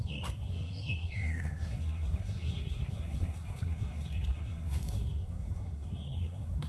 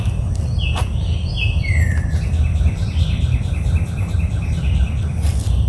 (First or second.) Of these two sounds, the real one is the second